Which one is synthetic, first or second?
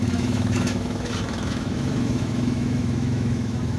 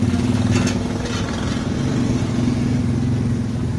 first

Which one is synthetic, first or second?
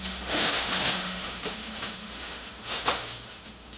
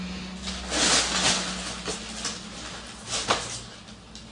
first